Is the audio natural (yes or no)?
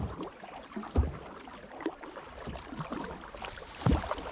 no